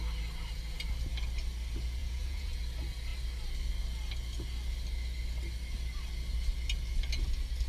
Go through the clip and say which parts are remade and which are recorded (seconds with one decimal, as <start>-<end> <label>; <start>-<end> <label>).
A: 0.0-2.0 recorded; 2.0-2.6 remade; 2.6-7.7 recorded

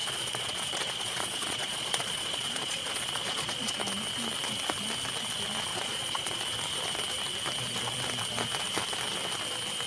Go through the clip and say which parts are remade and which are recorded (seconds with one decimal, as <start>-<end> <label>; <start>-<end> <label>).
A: 0.0-3.8 remade; 3.8-5.7 recorded; 5.7-6.4 remade; 6.4-9.9 recorded